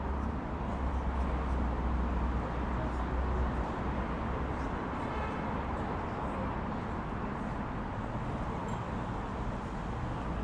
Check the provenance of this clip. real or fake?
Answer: real